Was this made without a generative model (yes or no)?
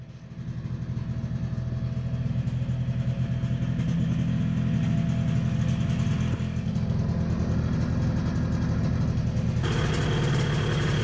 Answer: yes